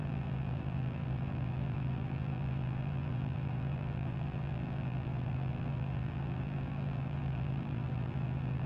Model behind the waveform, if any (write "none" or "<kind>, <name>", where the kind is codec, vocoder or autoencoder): vocoder, BigVGAN v2